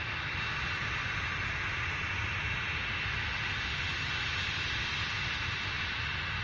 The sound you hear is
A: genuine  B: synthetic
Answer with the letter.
A